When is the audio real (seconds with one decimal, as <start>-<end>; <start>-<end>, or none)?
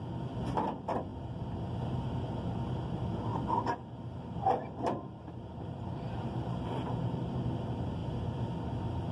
0.0-3.3; 7.3-9.1